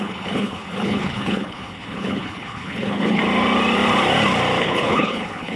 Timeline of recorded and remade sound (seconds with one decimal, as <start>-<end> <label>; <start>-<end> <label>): 0.0-3.2 remade; 3.2-4.6 recorded; 4.6-5.6 remade